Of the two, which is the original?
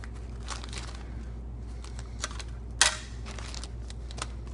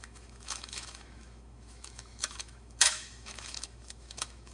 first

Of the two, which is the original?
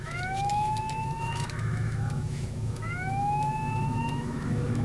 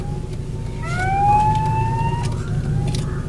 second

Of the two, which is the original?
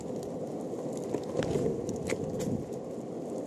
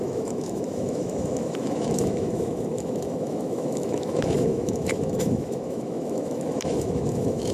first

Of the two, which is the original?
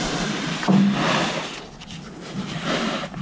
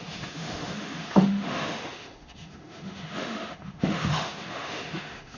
first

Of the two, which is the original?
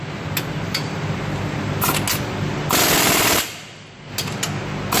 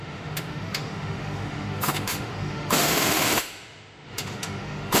first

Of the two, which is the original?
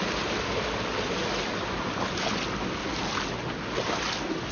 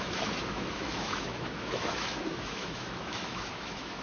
first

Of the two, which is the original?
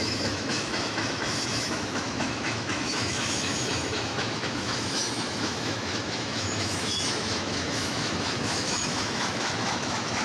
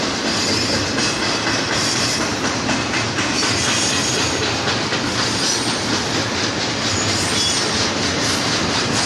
second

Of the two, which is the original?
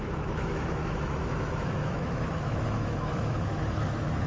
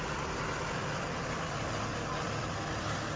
second